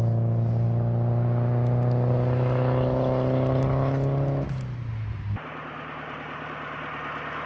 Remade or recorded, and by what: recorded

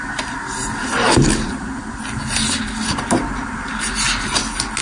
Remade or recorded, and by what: recorded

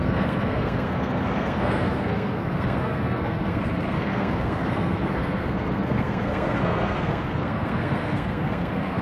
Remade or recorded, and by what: remade, codec, SNAC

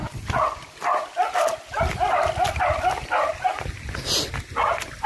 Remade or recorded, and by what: recorded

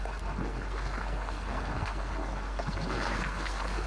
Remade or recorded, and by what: remade, codec, SNAC